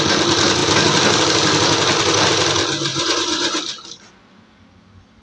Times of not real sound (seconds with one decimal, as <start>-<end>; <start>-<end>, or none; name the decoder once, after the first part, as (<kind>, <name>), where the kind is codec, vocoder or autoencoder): 2.9-3.6 (vocoder, Vocos)